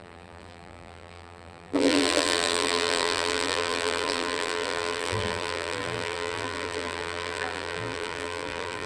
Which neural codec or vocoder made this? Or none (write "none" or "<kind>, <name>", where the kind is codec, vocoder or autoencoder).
vocoder, BigVGAN v2